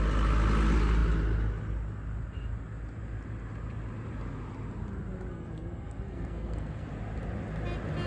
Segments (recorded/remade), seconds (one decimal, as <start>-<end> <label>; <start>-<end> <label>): 0.0-5.3 recorded; 5.3-6.9 remade; 6.9-8.1 recorded